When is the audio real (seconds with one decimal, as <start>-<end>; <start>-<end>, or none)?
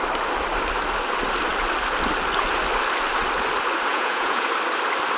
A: 0.0-3.9; 4.5-5.2